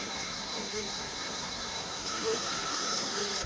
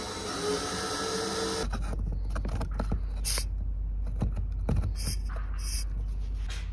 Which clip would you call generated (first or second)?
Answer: first